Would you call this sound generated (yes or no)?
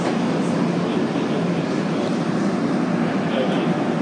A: no